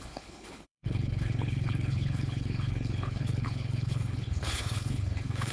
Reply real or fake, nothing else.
fake